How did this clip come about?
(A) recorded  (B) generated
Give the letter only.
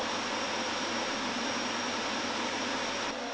A